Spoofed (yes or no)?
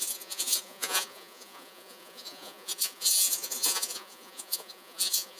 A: yes